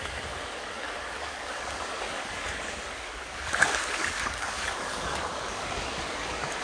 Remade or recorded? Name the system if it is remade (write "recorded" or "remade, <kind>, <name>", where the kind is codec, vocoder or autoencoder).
remade, codec, DAC